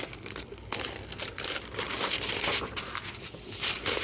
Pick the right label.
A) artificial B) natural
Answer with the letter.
B